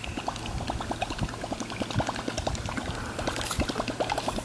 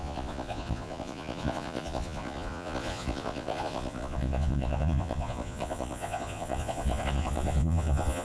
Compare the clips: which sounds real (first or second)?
first